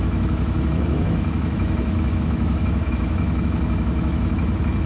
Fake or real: fake